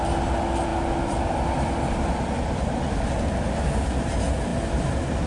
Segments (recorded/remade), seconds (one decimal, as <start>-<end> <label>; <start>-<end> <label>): 0.0-5.3 recorded